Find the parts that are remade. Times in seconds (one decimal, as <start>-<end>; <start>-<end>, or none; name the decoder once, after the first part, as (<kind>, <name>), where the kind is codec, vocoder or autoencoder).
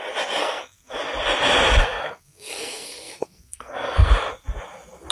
0.4-1.0 (codec, SNAC); 1.8-4.1